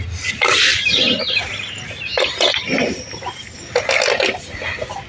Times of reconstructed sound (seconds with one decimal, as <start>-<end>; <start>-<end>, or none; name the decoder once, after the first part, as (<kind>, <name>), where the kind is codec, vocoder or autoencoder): none